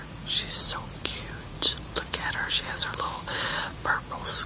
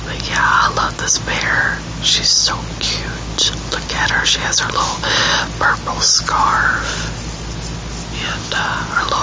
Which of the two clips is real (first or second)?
second